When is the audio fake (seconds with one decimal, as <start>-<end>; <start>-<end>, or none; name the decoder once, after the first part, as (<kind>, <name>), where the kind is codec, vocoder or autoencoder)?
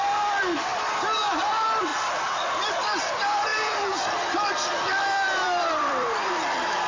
0.0-0.7 (vocoder, BigVGAN v2); 1.4-6.9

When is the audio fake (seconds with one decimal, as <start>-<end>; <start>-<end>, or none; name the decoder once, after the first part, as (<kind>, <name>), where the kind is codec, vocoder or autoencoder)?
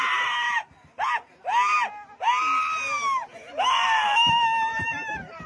4.7-5.5 (vocoder, BigVGAN v2)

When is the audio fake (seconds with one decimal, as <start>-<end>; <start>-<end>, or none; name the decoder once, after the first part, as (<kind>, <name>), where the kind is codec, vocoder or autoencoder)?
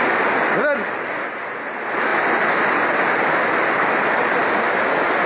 none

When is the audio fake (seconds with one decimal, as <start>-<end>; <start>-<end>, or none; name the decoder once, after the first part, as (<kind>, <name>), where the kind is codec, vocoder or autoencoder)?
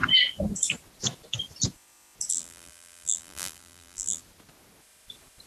2.3-4.2 (vocoder, BigVGAN v2)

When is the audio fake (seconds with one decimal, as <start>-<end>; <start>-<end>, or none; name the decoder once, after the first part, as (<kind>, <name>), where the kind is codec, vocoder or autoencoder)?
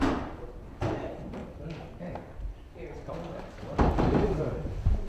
0.0-1.4 (vocoder, BigVGAN v2); 3.9-5.1